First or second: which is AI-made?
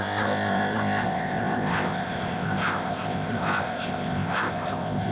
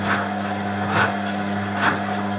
first